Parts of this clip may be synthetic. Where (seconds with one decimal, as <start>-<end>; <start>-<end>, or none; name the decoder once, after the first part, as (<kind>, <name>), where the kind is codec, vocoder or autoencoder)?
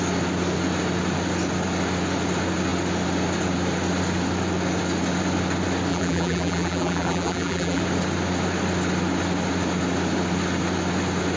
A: 5.9-7.8 (vocoder, BigVGAN v2)